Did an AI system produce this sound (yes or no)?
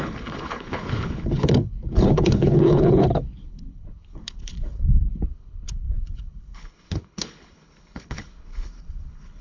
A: yes